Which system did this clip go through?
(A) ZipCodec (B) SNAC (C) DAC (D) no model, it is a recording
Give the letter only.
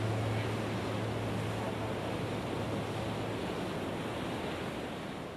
D